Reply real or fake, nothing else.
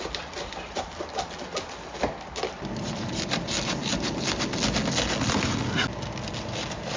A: real